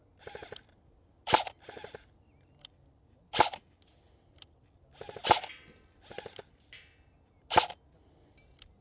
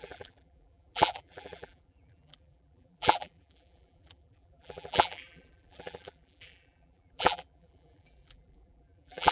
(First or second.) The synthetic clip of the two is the second